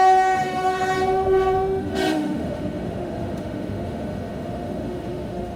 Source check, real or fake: fake